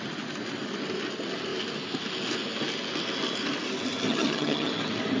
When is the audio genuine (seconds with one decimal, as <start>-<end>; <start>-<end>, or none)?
0.0-4.1; 4.7-5.2